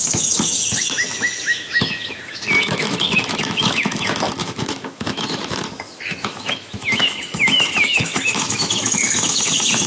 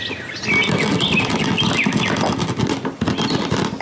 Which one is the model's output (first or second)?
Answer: first